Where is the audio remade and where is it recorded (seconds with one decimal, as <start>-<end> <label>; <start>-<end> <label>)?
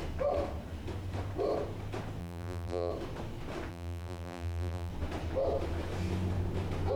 0.0-2.2 recorded; 2.2-2.9 remade; 2.9-3.7 recorded; 3.7-4.9 remade; 4.9-7.0 recorded